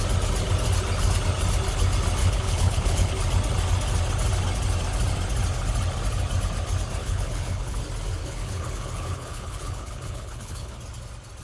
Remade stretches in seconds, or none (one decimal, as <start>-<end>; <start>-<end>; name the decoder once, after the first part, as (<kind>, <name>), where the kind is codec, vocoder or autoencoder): 2.2-3.1 (codec, HILCodec); 7.0-7.8; 8.2-10.8